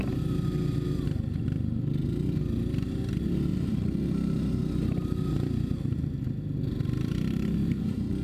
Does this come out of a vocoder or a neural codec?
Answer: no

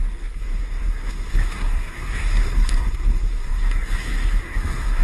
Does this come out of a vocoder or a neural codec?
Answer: yes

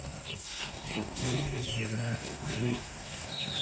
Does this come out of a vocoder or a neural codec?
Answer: yes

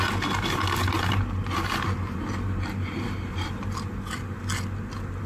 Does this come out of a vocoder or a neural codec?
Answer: no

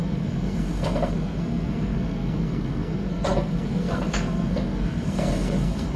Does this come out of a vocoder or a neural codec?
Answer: yes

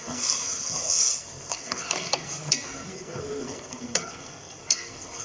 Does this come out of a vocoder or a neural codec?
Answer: yes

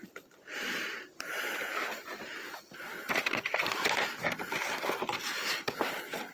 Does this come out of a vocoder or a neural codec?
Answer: no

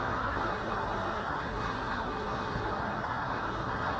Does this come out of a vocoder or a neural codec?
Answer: yes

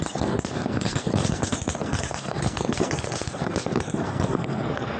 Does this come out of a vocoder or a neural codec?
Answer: yes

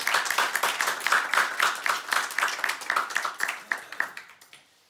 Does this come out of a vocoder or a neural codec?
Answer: no